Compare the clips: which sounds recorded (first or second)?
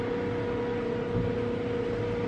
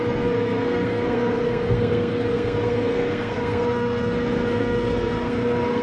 first